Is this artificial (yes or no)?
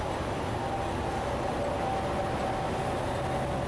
no